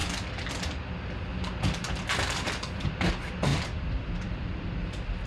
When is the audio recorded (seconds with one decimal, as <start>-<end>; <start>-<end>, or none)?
0.0-1.3; 3.1-3.5

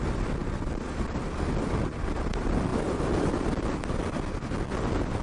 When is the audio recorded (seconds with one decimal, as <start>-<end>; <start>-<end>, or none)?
0.0-5.2

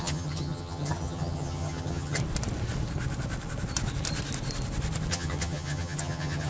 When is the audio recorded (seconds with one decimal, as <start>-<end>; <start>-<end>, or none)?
2.2-5.1

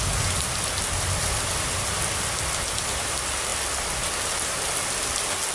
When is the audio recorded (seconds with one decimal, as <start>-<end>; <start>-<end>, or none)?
0.0-5.5